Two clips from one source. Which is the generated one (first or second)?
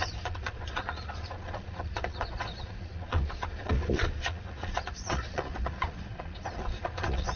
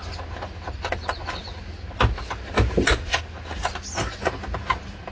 first